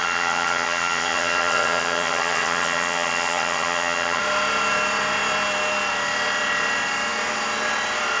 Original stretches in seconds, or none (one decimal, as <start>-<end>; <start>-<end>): 4.2-8.2